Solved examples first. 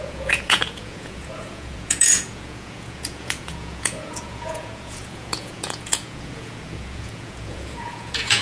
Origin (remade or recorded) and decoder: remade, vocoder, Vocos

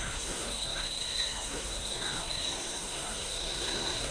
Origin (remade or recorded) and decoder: remade, codec, SNAC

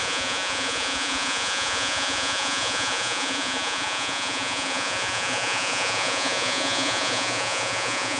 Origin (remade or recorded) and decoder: remade, vocoder, Vocos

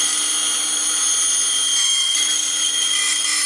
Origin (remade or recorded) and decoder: recorded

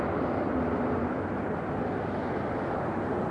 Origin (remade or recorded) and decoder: recorded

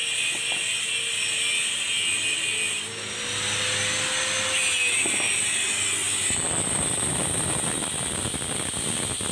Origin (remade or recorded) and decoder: recorded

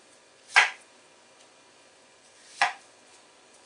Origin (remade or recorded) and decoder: remade, vocoder, Vocos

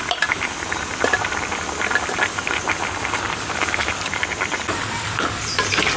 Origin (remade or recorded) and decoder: recorded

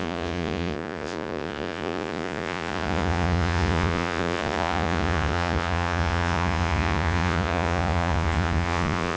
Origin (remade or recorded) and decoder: remade, vocoder, Vocos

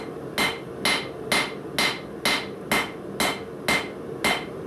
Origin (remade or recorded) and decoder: recorded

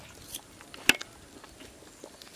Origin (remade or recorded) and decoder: recorded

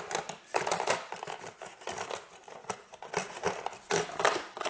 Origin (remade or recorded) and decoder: recorded